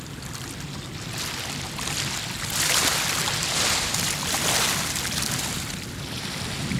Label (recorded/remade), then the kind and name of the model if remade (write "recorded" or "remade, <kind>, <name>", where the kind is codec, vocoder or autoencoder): recorded